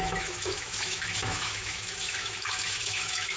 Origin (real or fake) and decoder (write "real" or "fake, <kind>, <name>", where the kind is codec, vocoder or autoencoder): fake, autoencoder, DAC-VAE